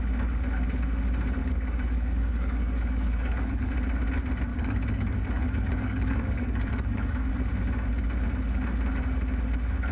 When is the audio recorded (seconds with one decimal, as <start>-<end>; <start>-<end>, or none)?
0.0-1.4; 3.7-4.5; 7.3-9.9